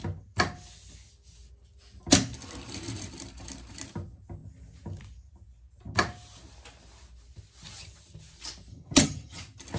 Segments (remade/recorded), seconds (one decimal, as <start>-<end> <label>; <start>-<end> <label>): 0.0-8.7 recorded; 8.7-9.4 remade; 9.4-9.8 recorded